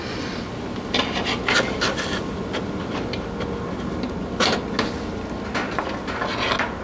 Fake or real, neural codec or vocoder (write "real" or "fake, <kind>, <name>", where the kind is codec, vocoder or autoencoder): real